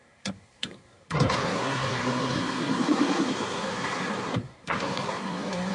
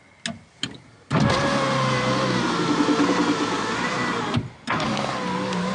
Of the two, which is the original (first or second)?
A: second